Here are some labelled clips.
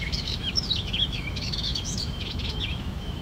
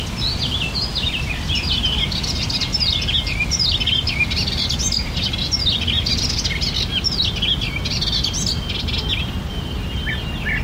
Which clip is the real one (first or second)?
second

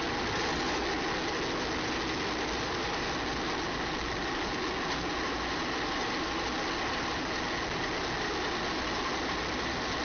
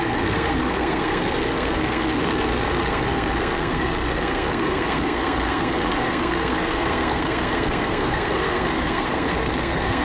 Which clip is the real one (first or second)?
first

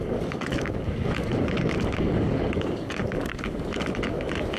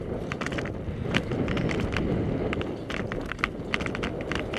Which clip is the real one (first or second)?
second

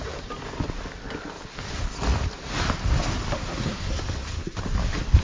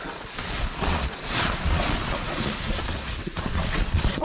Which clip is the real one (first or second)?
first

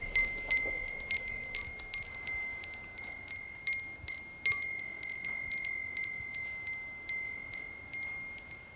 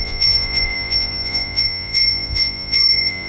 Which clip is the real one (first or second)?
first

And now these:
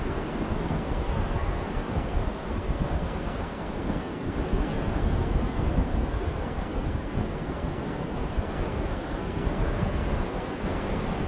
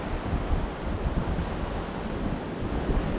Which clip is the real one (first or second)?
second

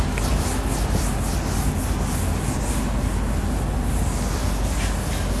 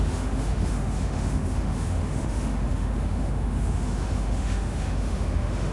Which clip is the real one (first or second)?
first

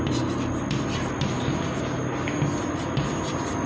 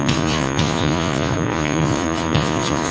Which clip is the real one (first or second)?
first